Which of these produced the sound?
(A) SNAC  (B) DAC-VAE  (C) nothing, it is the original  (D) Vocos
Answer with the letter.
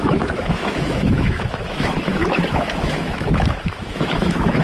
B